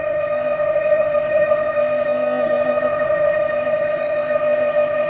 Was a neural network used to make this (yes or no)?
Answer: yes